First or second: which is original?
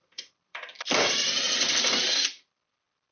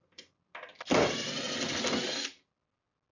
second